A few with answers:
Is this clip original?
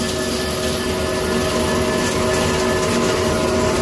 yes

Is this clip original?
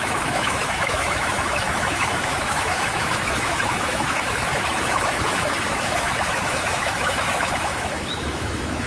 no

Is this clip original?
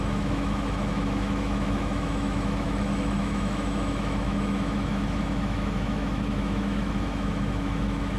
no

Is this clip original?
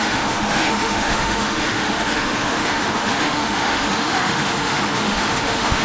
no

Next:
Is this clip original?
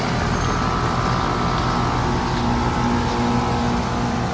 yes